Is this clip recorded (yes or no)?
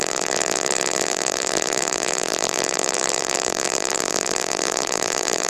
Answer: no